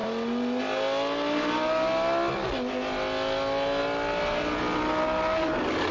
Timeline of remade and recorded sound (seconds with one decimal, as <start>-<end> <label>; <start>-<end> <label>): 0.0-5.9 recorded